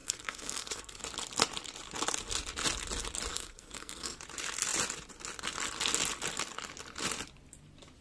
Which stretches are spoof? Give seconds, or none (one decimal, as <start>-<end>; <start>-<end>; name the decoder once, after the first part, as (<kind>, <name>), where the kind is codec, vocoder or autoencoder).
0.0-1.0 (codec, SNAC); 3.3-4.2